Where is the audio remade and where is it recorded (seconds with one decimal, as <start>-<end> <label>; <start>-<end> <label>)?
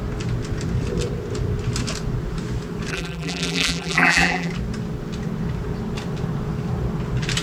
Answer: 0.0-2.9 recorded; 2.9-4.5 remade; 4.5-7.4 recorded